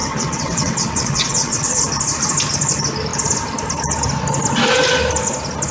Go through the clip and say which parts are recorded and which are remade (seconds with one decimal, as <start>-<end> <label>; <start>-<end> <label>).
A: 0.0-1.8 remade; 1.8-5.7 recorded